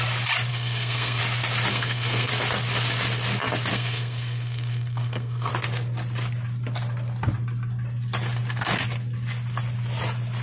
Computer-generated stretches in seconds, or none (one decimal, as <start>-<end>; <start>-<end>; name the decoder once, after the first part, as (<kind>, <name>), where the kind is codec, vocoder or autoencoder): 0.5-1.2 (codec, SNAC); 1.7-2.3; 3.7-5.5